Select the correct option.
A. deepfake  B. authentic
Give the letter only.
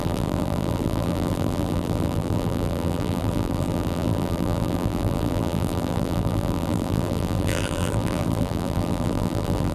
A